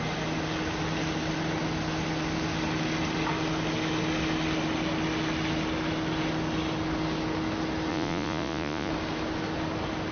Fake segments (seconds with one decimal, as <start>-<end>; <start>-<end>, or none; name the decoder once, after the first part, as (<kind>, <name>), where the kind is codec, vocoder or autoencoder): 7.9-8.9 (vocoder, Vocos)